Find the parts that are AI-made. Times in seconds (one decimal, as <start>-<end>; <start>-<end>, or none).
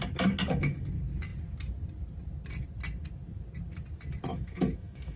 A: 0.4-0.9; 4.3-5.2